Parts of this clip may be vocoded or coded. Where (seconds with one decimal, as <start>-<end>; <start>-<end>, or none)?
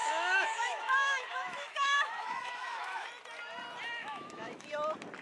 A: 0.0-3.1; 4.0-4.7